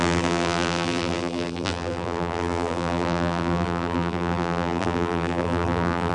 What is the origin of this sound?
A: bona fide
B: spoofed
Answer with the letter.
B